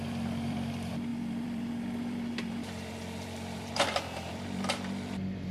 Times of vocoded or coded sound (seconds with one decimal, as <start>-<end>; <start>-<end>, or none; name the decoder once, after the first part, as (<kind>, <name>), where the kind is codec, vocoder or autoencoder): 0.0-5.5 (vocoder, BigVGAN v2)